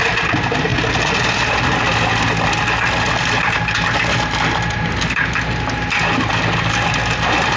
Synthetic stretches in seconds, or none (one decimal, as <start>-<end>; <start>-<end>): none